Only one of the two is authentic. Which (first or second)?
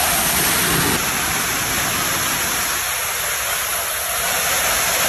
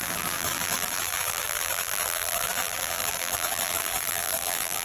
first